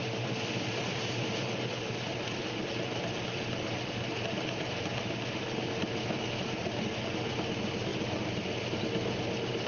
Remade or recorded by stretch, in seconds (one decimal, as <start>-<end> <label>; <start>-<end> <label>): 0.0-6.0 recorded; 6.0-6.6 remade; 6.6-9.7 recorded